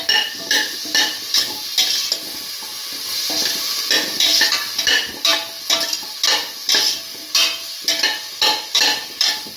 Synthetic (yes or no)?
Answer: no